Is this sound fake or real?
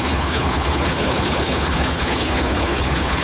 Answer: fake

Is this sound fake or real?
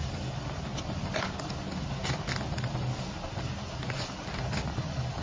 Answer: real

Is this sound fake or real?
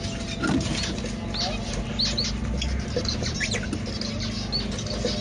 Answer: real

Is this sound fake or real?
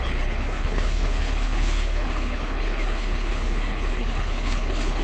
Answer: fake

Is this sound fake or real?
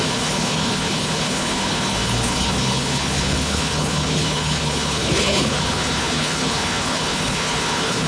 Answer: fake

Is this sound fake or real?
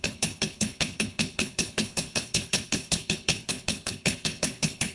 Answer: fake